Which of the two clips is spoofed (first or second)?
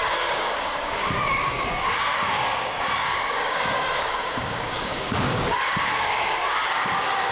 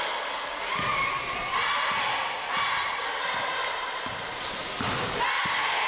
first